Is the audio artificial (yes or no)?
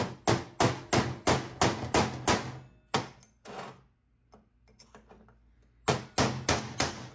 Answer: no